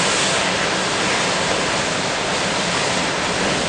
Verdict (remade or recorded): recorded